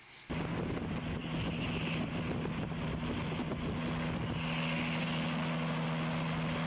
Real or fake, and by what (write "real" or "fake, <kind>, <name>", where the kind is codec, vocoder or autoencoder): real